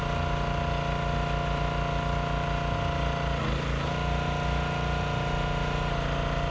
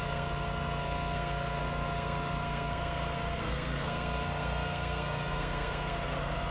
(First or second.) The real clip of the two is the first